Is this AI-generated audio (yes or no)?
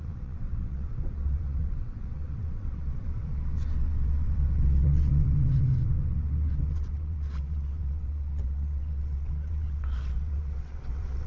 yes